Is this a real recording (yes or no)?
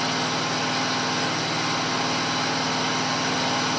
yes